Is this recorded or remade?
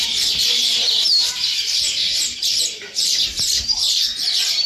remade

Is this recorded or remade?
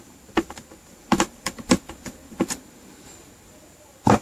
remade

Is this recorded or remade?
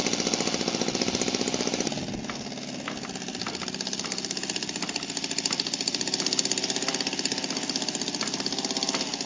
recorded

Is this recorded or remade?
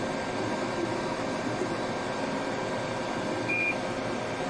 recorded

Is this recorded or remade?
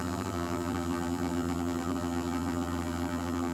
remade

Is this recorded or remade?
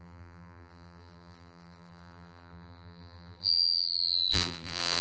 remade